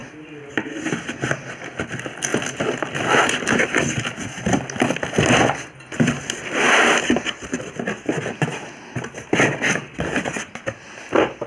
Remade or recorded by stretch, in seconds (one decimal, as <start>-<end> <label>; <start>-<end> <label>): 0.0-11.5 recorded